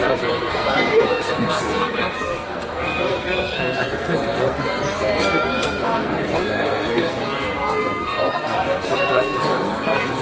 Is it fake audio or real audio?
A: fake